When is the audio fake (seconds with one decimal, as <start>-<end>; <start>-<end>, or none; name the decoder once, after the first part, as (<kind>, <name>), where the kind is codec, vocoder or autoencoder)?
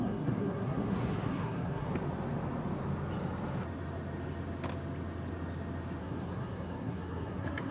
0.0-1.9 (codec, SNAC); 6.0-7.7